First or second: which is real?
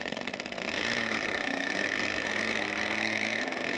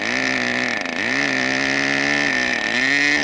second